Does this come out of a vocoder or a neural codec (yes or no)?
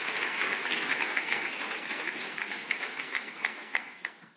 yes